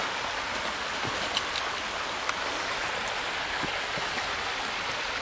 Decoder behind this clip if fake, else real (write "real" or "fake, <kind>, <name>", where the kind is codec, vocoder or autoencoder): real